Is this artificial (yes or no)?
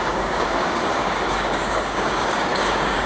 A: yes